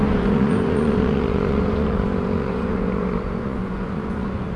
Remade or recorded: remade